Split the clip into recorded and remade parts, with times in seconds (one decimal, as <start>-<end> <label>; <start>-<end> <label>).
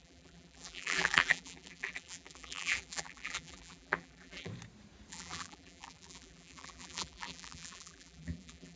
0.0-4.5 remade; 4.5-5.1 recorded; 5.1-8.8 remade